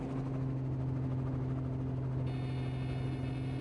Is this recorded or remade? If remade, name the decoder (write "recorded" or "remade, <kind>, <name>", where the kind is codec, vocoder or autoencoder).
recorded